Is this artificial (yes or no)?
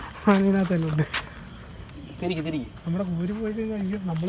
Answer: no